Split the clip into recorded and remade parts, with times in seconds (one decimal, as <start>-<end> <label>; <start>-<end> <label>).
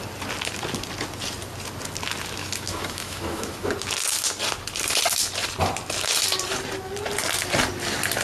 0.0-2.4 recorded; 2.4-3.7 remade; 3.7-8.2 recorded